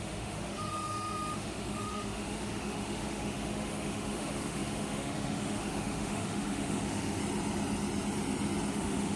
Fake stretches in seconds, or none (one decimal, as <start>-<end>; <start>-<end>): 0.0-7.2; 8.7-9.2